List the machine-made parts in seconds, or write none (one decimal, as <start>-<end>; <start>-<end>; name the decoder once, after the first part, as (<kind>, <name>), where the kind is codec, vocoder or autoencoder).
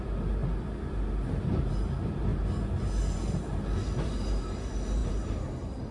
none